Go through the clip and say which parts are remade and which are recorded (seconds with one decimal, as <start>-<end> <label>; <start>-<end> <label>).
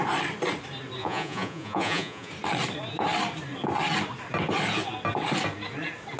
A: 0.0-1.0 recorded; 1.0-2.3 remade; 2.3-6.2 recorded